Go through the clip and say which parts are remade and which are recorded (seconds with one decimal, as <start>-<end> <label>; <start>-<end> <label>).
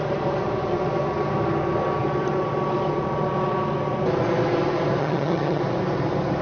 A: 0.0-5.0 recorded; 5.0-5.6 remade; 5.6-6.4 recorded